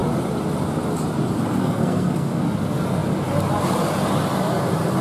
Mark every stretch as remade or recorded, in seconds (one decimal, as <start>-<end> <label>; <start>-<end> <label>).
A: 0.0-1.6 recorded; 1.6-2.3 remade; 2.3-5.0 recorded